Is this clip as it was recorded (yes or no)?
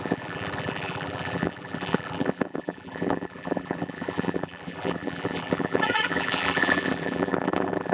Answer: no